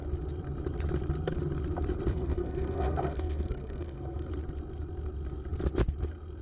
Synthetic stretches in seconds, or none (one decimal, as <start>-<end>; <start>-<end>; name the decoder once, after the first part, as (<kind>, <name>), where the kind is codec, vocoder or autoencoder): 2.1-4.3 (codec, SNAC)